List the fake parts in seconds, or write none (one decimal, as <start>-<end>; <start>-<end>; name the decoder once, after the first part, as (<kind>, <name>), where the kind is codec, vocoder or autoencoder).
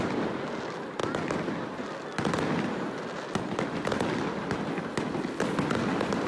none